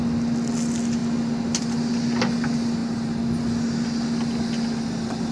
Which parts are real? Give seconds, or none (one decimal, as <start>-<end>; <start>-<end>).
0.0-5.3